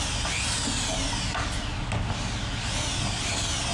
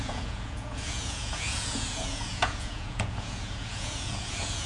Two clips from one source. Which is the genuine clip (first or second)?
first